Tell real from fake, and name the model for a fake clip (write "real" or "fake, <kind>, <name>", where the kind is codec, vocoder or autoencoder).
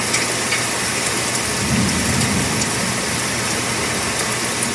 real